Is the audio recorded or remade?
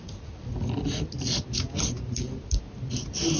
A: recorded